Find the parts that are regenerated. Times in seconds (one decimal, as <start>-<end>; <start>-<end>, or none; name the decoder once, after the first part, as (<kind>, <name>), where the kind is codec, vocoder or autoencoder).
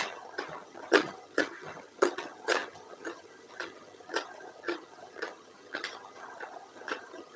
0.0-7.4 (vocoder, HiFi-GAN)